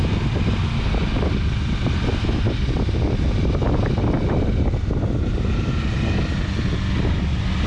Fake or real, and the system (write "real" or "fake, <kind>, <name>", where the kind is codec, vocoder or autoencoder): real